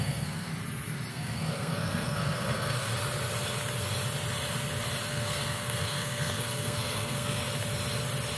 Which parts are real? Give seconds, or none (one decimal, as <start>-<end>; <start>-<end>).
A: 0.5-1.1; 2.9-5.1; 7.4-8.4

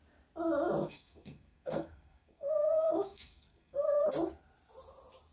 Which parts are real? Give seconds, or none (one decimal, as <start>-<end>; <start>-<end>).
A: 0.0-0.8; 4.0-5.3

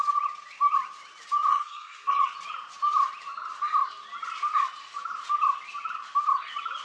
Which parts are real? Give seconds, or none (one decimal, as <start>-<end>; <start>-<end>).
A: 0.0-1.5; 2.2-6.8